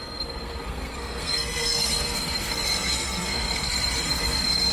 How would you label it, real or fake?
fake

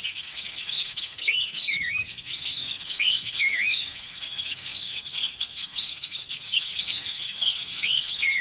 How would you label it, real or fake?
fake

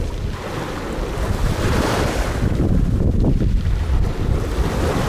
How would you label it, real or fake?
real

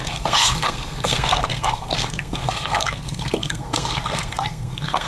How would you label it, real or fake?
fake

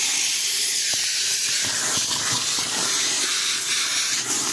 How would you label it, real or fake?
real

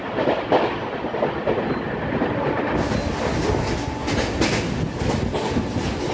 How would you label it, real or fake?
real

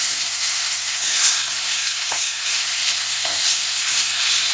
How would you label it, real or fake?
fake